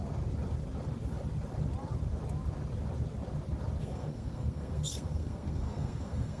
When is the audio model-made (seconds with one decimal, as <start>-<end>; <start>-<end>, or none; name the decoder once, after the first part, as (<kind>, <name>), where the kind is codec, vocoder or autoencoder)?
3.8-6.4 (codec, SNAC)